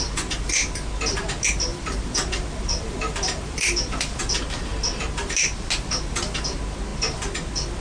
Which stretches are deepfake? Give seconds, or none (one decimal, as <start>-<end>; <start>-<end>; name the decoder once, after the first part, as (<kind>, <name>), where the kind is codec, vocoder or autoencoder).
1.7-4.2 (vocoder, BigVGAN v2)